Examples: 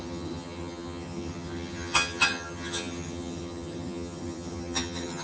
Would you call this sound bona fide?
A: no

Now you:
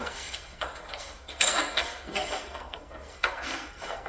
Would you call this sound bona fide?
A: no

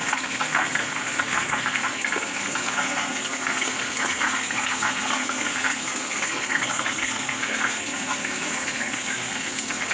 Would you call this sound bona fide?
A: no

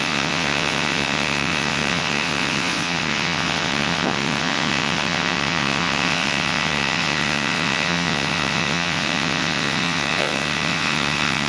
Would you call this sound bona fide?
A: no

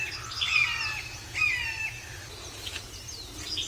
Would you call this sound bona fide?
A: yes